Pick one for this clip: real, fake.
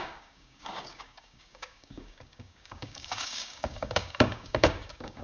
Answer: fake